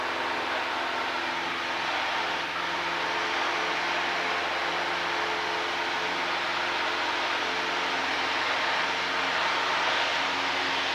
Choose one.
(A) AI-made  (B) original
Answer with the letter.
B